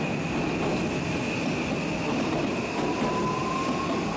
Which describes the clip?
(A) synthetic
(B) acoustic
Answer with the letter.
B